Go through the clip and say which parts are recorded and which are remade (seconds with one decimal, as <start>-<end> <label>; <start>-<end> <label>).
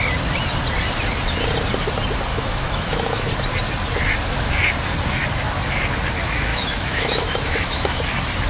0.0-2.3 recorded; 2.3-3.3 remade; 3.3-6.5 recorded; 6.5-8.0 remade; 8.0-8.5 recorded